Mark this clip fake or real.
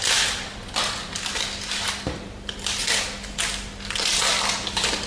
real